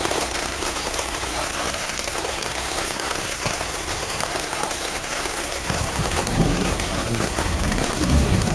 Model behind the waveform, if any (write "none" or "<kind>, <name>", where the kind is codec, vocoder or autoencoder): codec, SNAC